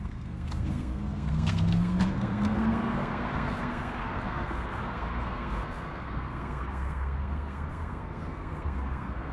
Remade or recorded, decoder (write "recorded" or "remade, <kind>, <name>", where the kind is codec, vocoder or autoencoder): remade, codec, SNAC